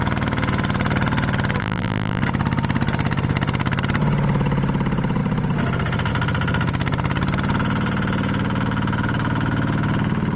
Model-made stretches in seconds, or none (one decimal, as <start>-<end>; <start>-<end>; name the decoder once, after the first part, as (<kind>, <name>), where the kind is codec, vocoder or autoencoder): 1.6-2.2 (vocoder, BigVGAN v2)